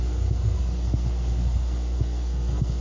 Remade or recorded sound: remade